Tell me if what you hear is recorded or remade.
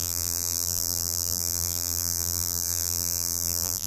remade